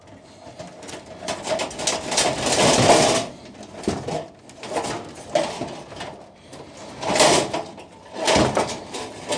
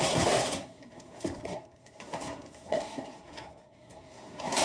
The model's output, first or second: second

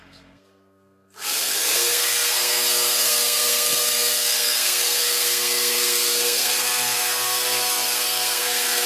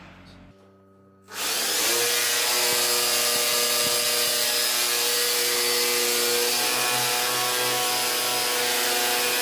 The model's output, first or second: first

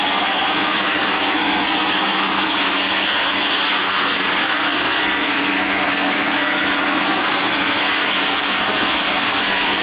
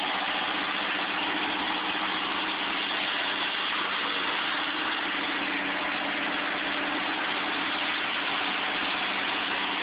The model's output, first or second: first